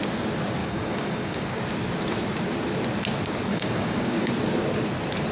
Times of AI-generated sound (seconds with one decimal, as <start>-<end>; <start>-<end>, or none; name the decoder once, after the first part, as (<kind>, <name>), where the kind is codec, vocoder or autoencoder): 0.6-1.6 (codec, DAC); 3.5-4.3